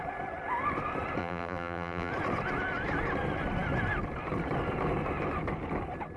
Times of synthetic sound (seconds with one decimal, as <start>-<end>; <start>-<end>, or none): 1.2-2.1